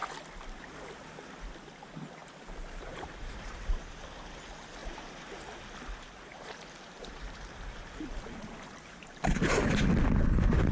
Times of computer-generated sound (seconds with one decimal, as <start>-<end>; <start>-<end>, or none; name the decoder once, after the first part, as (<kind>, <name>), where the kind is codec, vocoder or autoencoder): 2.2-3.9 (vocoder, BigVGAN v2); 4.8-5.6; 6.3-9.8